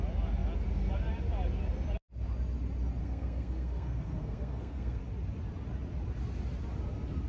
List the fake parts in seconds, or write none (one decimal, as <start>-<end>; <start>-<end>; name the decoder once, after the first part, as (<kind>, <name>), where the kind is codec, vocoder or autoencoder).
3.0-5.0 (codec, SNAC)